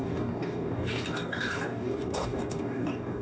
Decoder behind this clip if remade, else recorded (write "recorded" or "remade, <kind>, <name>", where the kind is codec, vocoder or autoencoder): remade, codec, DAC